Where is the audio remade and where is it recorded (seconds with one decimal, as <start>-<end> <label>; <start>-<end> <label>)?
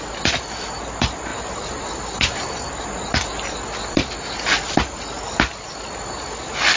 0.0-6.8 recorded